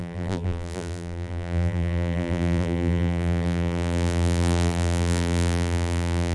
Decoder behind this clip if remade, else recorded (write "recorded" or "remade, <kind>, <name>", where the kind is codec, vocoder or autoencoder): remade, vocoder, BigVGAN v2